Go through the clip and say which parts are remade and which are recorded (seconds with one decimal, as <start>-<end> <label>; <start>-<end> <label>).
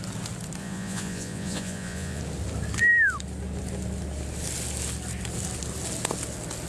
0.0-0.6 recorded; 0.6-2.2 remade; 2.2-6.7 recorded